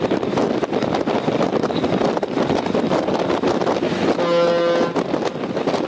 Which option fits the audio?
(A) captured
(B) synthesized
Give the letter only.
A